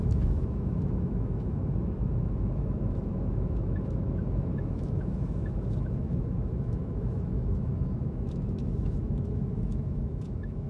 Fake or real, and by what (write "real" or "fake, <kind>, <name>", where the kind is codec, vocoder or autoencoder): fake, autoencoder, DAC-VAE